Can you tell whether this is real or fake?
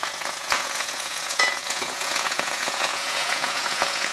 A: fake